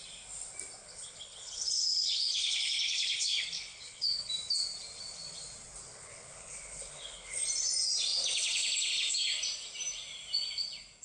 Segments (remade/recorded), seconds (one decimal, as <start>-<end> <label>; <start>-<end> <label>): 0.0-0.8 recorded; 0.8-4.3 remade; 4.3-5.9 recorded; 5.9-7.4 remade; 7.4-11.0 recorded